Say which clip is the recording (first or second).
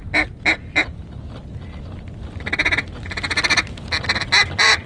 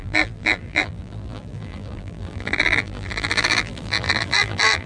first